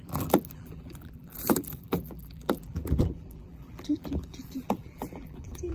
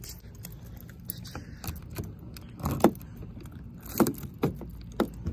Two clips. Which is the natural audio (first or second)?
second